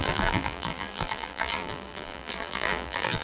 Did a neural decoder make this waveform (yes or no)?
yes